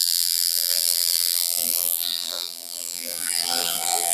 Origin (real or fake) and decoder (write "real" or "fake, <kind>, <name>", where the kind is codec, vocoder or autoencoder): fake, vocoder, BigVGAN v2